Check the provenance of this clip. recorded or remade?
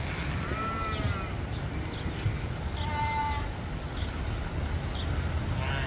recorded